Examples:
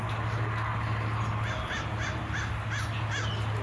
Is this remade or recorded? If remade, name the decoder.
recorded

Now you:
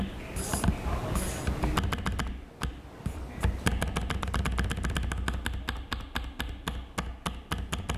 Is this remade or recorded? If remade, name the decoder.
recorded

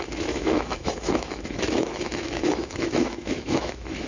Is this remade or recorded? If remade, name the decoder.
remade, autoencoder, DAC-VAE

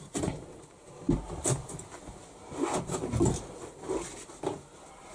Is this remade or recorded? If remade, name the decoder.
recorded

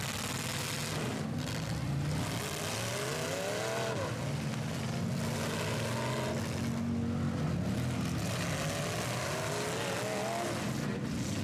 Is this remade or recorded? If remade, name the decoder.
recorded